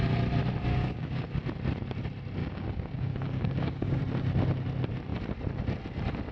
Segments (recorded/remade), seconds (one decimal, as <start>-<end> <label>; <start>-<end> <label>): 0.0-0.7 recorded; 0.7-1.4 remade; 1.4-2.4 recorded; 2.4-4.0 remade; 4.0-6.3 recorded